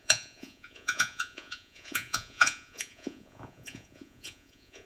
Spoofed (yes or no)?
yes